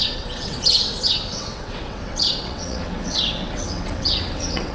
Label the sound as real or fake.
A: fake